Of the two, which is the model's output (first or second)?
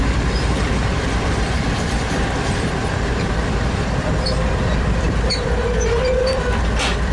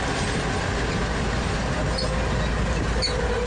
first